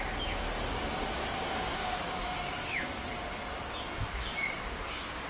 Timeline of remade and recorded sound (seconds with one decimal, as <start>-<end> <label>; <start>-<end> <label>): 0.0-1.2 recorded; 1.2-2.9 remade; 2.9-4.0 recorded; 4.0-5.3 remade